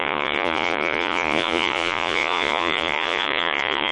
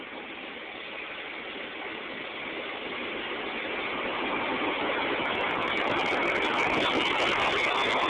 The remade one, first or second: first